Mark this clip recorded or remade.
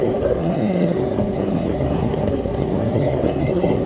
remade